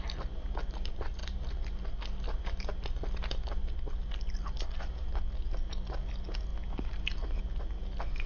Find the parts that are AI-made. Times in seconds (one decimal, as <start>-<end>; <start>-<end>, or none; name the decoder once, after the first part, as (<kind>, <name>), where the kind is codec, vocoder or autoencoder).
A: none